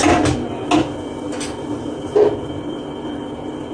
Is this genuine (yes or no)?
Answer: yes